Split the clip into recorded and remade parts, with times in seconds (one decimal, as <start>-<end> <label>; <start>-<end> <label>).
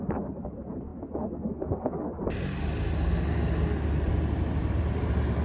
0.0-0.9 remade; 0.9-4.1 recorded; 4.1-5.4 remade